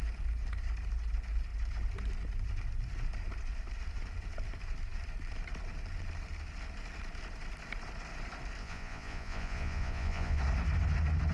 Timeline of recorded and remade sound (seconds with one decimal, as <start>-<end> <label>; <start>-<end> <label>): 0.0-8.6 recorded; 8.6-10.4 remade; 10.4-11.3 recorded